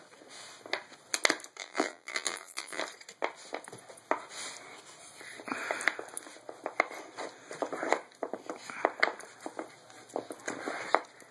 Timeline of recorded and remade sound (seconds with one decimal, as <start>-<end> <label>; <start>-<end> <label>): 0.0-1.6 recorded; 1.6-2.8 remade; 2.8-11.3 recorded

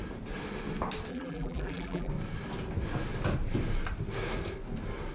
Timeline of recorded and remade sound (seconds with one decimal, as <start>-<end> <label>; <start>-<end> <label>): 0.0-1.1 recorded; 1.1-2.1 remade; 2.1-5.1 recorded

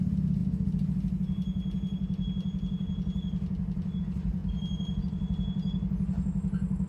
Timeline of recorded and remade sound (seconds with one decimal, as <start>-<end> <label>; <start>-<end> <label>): 0.0-6.9 recorded

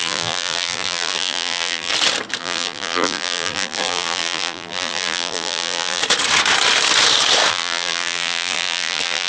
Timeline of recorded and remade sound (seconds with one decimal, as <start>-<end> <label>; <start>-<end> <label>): 0.0-1.9 remade; 1.9-2.4 recorded; 2.4-6.0 remade; 6.0-7.5 recorded; 7.5-9.3 remade